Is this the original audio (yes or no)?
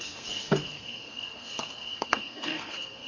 no